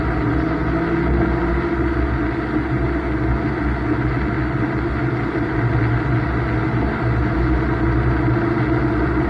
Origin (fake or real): real